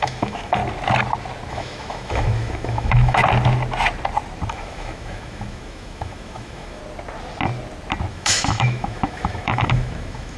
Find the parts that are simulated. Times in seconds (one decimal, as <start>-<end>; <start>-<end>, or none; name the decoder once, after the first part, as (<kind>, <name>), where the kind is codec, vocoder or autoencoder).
0.0-0.6 (autoencoder, DAC-VAE); 1.5-3.2; 4.5-6.8; 8.1-10.4